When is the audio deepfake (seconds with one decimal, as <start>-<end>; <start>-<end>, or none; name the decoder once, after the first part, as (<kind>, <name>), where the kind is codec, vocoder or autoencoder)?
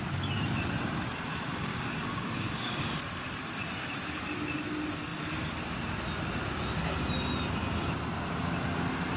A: 1.7-3.0 (codec, DAC)